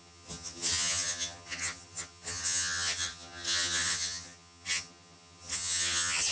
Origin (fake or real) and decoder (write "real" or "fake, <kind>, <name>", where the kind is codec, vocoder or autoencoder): fake, vocoder, HiFi-GAN